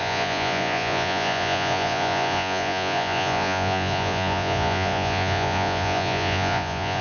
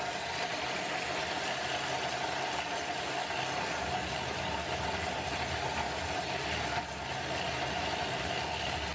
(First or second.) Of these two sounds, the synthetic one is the first